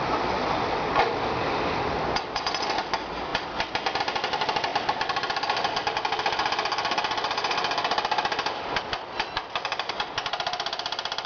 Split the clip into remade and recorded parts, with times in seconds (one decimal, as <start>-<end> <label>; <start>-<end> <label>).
0.0-11.3 recorded